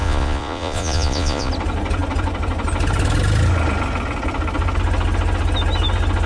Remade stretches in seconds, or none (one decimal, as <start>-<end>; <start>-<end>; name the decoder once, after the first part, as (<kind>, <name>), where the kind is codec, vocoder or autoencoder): 0.0-1.5 (vocoder, Vocos)